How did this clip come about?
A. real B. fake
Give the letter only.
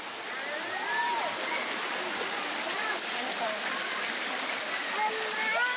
A